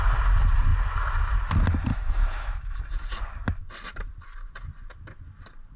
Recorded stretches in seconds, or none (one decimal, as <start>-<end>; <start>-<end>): 0.0-1.9; 2.8-5.8